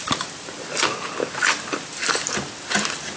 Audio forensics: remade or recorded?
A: recorded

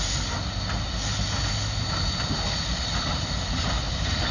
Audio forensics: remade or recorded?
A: recorded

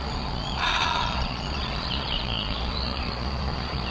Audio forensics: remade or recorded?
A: remade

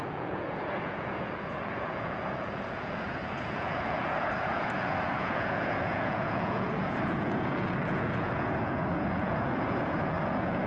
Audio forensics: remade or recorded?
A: remade